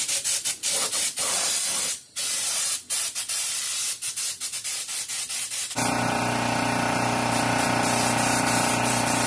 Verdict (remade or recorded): recorded